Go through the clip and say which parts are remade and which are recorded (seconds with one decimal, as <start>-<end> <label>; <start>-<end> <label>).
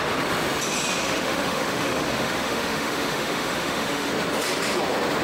0.0-1.0 recorded; 1.0-4.1 remade; 4.1-5.2 recorded